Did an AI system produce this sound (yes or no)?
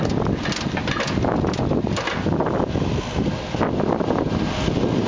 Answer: no